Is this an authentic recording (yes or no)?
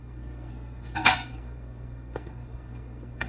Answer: no